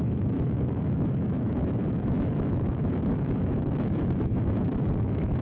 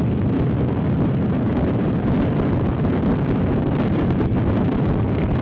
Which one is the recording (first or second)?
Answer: second